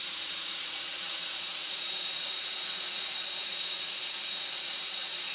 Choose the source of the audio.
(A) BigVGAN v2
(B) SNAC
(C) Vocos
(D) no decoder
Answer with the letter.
C